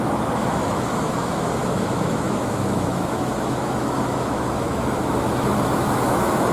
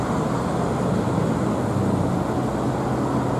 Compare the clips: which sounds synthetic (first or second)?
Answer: first